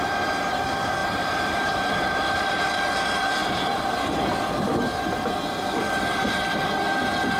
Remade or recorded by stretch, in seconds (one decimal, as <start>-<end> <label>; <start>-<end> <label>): 0.0-1.0 recorded; 1.0-2.9 remade; 2.9-7.4 recorded